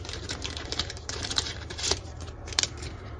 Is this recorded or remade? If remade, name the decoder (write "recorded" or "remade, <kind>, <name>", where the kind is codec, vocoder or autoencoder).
remade, vocoder, BigVGAN v2